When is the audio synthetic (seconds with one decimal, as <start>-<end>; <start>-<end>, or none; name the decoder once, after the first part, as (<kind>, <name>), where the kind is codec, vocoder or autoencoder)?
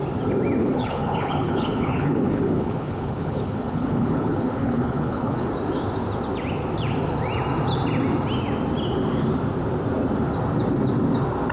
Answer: 0.6-5.5 (codec, HILCodec)